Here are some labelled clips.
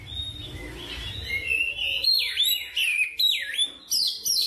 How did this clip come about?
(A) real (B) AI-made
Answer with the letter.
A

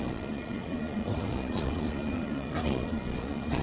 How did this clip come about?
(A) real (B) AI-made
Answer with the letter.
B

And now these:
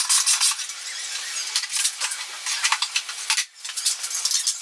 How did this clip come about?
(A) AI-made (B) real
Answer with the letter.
B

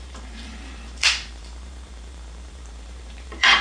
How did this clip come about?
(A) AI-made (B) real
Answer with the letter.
A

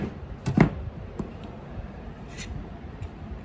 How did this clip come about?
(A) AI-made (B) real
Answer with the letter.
A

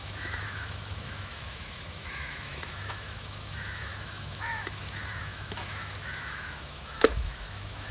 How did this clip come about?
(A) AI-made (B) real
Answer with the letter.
A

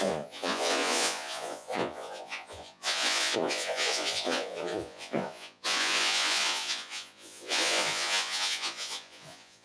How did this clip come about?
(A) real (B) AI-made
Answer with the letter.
B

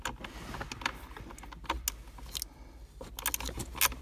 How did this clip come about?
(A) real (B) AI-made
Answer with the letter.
A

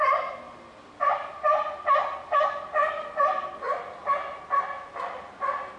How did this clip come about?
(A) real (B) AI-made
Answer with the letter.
A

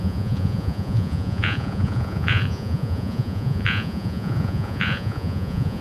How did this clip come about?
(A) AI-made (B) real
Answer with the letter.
A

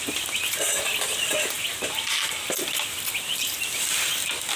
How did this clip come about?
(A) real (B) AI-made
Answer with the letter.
A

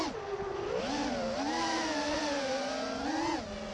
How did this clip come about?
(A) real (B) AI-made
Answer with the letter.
A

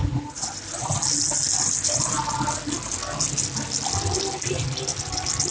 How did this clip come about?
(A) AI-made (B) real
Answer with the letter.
B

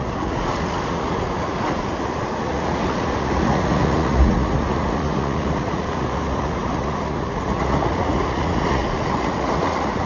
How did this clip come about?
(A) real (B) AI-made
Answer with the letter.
B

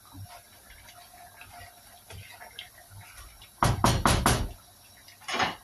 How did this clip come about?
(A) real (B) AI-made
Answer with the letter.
A